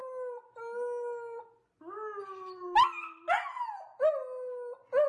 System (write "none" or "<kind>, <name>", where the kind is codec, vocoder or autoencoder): none